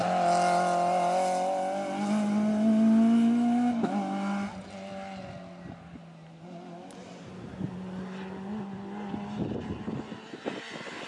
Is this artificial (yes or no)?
no